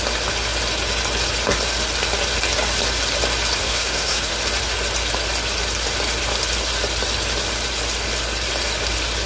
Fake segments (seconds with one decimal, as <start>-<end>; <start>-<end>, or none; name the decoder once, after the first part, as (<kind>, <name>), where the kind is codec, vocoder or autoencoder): 3.6-4.3 (codec, SNAC)